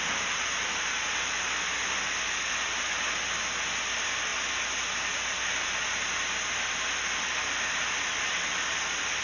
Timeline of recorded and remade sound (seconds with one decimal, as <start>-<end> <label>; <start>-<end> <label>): 0.0-9.2 recorded